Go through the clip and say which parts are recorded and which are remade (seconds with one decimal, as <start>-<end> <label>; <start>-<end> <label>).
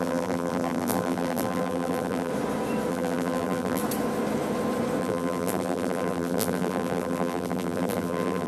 0.0-2.3 remade; 2.3-2.9 recorded; 2.9-3.8 remade; 3.8-5.0 recorded; 5.0-8.5 remade